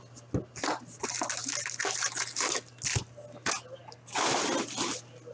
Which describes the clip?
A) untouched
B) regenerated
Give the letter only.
A